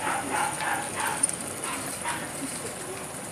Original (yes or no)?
yes